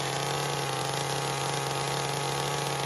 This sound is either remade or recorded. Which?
recorded